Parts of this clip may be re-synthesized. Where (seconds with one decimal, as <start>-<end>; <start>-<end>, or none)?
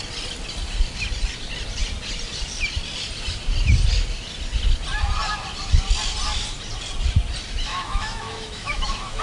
7.7-9.2